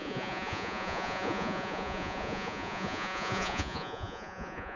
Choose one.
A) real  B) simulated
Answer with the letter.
B